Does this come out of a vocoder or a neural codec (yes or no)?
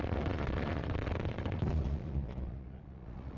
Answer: yes